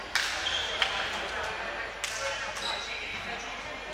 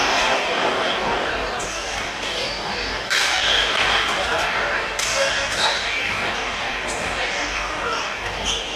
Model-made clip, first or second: second